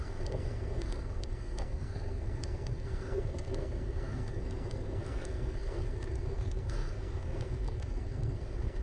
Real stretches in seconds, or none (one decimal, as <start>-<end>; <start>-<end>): none